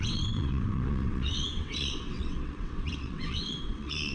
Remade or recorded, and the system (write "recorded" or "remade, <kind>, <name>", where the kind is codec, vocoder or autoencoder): remade, vocoder, WaveNeXt